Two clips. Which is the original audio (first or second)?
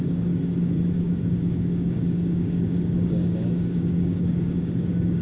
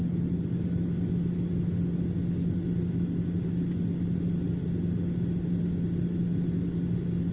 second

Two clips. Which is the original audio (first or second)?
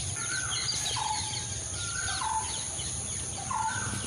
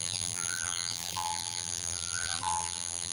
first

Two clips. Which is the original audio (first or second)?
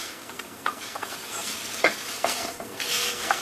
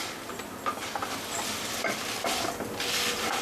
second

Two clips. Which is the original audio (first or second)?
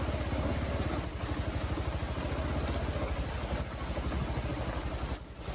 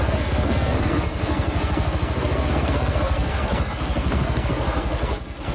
first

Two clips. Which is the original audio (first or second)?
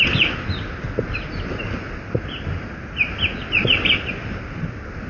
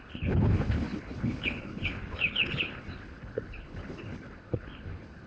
first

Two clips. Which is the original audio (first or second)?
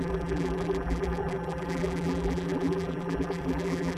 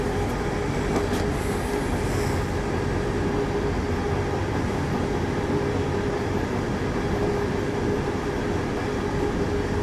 second